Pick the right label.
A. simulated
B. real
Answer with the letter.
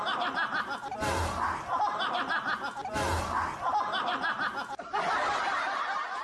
B